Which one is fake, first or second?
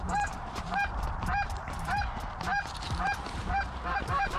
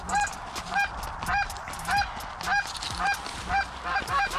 first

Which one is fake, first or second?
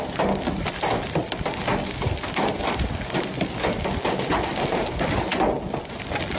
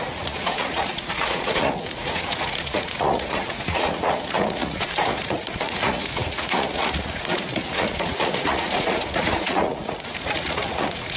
second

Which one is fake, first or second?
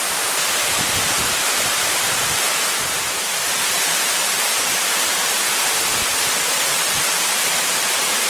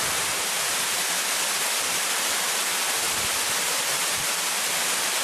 first